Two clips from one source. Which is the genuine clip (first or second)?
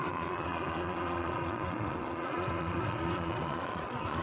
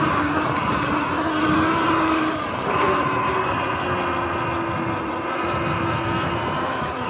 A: second